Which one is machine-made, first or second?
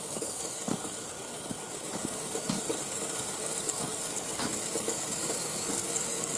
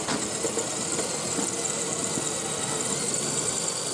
first